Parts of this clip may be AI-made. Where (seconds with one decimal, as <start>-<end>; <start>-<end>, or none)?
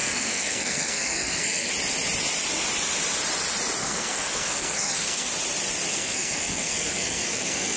0.0-1.7; 3.8-5.3; 5.9-7.8